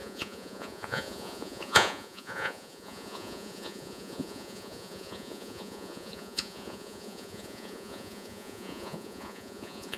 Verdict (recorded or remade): remade